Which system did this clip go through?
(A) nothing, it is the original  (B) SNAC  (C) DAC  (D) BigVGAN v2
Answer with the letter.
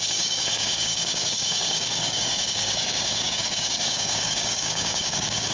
C